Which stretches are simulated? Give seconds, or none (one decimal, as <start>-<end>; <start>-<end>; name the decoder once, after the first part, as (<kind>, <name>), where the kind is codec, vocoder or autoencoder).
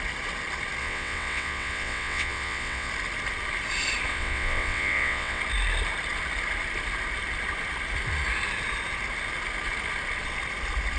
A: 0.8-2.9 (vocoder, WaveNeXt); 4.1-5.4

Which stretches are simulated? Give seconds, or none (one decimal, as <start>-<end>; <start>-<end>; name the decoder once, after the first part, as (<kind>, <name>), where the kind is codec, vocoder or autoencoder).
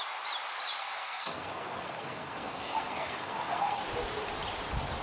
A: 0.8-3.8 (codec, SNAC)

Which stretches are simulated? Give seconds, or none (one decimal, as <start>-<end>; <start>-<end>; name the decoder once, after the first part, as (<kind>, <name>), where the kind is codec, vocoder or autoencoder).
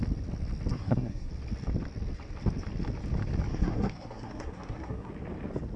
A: 0.7-1.3 (codec, SNAC); 3.5-5.1